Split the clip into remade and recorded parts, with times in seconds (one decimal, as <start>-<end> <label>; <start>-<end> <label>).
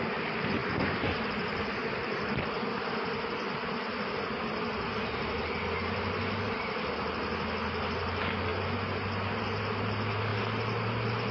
0.0-8.5 remade; 8.5-9.4 recorded; 9.4-11.3 remade